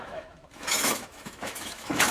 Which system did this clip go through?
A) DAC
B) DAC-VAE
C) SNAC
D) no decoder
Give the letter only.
B